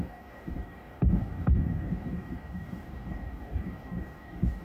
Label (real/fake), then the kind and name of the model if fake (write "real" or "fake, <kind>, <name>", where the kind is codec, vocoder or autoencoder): fake, codec, DAC